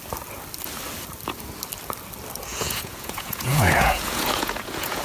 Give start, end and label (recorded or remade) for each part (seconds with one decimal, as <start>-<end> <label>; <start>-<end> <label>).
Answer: 0.0-2.5 recorded; 2.5-5.0 remade